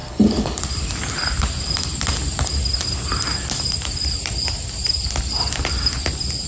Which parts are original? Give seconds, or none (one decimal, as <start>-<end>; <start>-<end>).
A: 0.6-6.5